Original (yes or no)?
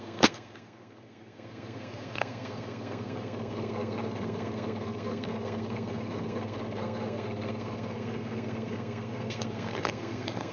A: no